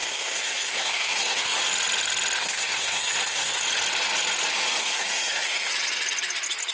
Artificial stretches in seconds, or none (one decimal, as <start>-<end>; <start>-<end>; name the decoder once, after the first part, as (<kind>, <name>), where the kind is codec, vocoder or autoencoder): 0.0-1.6 (codec, SNAC); 2.4-3.6; 4.8-5.7